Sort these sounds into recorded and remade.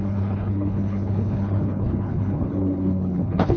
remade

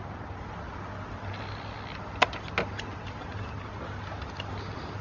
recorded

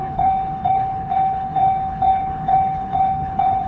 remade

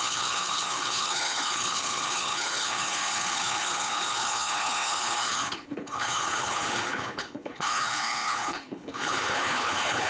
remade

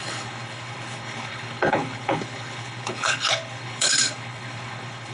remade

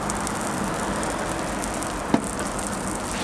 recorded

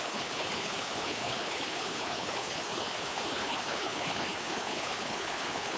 remade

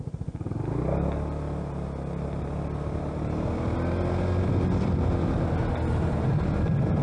recorded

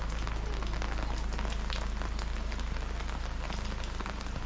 recorded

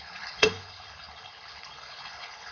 remade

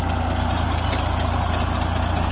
recorded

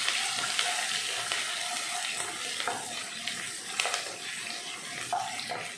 recorded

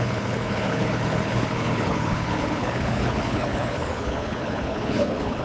remade